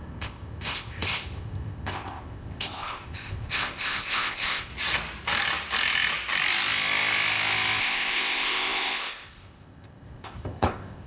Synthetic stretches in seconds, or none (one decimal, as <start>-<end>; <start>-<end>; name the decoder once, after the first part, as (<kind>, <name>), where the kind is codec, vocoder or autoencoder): 0.0-4.7 (codec, ZipCodec); 7.8-11.1

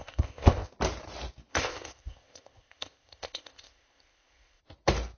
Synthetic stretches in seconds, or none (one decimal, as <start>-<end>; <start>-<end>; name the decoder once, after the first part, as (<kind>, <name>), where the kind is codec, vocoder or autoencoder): 0.0-0.7 (codec, ZipCodec); 1.5-4.6

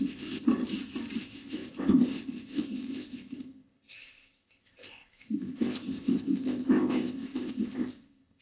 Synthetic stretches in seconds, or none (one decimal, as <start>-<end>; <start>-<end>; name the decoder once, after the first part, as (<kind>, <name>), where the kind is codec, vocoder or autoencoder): 0.0-0.5 (codec, ZipCodec); 1.2-8.4

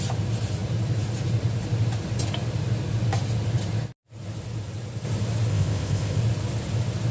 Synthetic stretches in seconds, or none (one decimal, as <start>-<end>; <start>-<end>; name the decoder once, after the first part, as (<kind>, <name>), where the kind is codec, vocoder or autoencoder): 5.5-6.2 (codec, ZipCodec)